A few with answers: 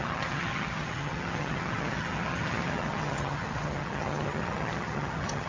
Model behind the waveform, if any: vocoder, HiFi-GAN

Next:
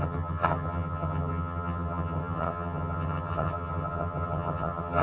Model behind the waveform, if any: vocoder, HiFi-GAN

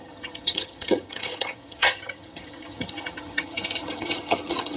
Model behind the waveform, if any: vocoder, HiFi-GAN